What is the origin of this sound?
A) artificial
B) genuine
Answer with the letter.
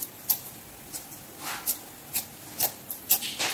B